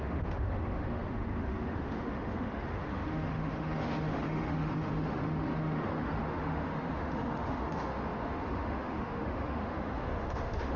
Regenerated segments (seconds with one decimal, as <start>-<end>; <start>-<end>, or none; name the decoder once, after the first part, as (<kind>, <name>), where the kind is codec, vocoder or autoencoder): 0.0-10.8 (autoencoder, DAC-VAE)